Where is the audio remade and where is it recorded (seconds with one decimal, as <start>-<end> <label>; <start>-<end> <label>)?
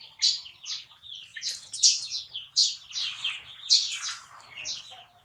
0.0-1.3 recorded; 1.3-2.2 remade; 2.2-5.2 recorded